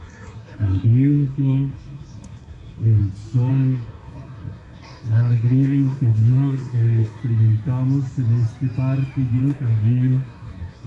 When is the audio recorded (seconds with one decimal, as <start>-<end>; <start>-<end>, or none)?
3.0-3.5; 7.2-9.4